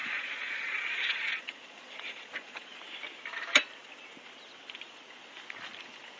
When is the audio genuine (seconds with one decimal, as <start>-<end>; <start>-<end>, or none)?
2.8-6.2